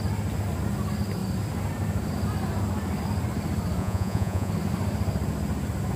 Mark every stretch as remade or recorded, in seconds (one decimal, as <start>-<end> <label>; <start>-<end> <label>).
0.0-3.8 recorded; 3.8-4.5 remade; 4.5-6.0 recorded